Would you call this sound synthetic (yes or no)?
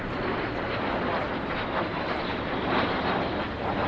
no